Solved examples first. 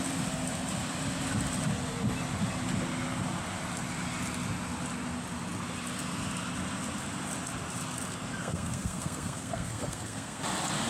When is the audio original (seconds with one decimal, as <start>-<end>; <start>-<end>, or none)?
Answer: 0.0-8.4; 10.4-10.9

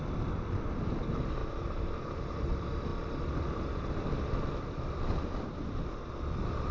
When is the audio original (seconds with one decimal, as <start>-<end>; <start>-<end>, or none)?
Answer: 0.0-1.4; 2.3-6.7

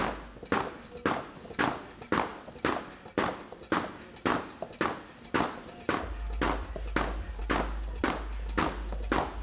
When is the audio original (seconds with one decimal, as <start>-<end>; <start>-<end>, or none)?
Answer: 0.0-9.4